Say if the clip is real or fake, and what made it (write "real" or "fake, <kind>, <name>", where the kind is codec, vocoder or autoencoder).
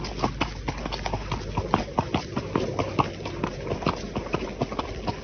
real